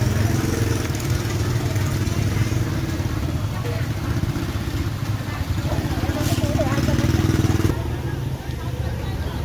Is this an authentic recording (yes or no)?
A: yes